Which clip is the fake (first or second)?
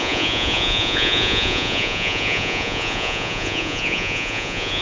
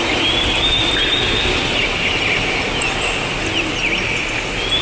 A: first